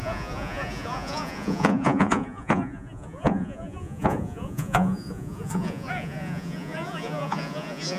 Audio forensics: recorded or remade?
remade